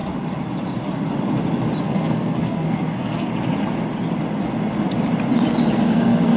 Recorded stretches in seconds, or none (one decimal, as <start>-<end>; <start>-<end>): 0.0-1.8; 3.3-5.7